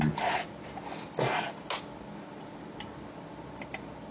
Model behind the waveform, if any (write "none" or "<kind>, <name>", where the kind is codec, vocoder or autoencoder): none